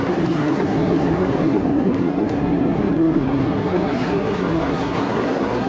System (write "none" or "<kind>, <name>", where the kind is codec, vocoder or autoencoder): codec, SNAC